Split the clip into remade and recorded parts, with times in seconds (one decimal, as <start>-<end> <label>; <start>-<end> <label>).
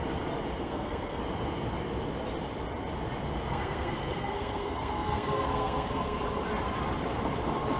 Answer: 0.0-0.6 recorded; 0.6-1.2 remade; 1.2-3.5 recorded; 3.5-6.2 remade; 6.2-7.8 recorded